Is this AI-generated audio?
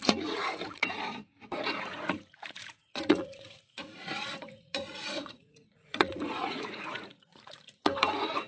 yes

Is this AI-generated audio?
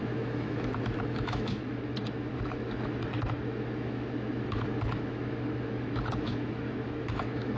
yes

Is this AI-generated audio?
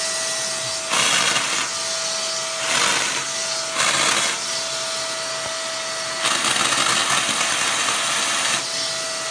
no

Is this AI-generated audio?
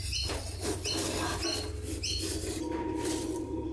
no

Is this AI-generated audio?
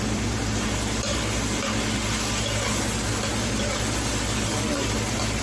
no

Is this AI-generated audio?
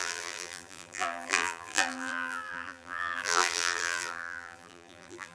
yes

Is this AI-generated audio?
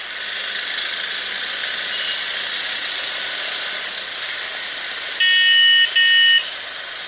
no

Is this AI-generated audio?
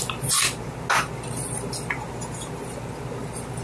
no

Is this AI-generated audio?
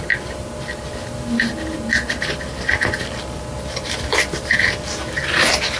no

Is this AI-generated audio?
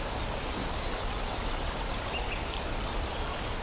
no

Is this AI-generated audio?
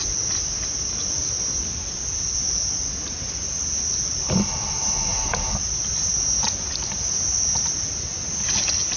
no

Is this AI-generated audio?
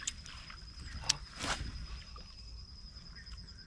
no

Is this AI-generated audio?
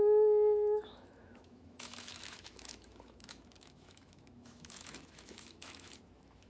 yes